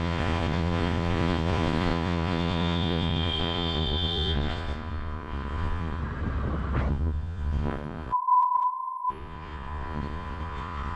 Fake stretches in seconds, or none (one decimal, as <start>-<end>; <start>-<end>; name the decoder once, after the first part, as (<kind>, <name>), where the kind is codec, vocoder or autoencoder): 0.0-6.0 (vocoder, Vocos); 6.9-11.0